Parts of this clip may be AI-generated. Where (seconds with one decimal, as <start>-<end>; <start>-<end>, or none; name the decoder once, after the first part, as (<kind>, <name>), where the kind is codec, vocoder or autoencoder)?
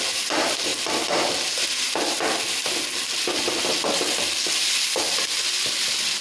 none